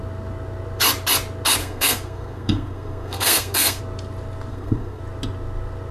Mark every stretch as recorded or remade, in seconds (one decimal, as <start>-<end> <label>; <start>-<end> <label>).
0.0-1.6 recorded; 1.6-3.8 remade; 3.8-4.5 recorded; 4.5-5.0 remade; 5.0-5.9 recorded